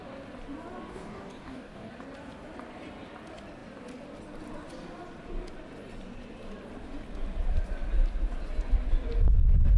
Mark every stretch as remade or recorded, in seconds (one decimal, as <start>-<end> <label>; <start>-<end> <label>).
0.0-0.9 recorded; 0.9-1.9 remade; 1.9-9.8 recorded